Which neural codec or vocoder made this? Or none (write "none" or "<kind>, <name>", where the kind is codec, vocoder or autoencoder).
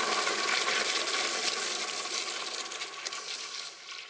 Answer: none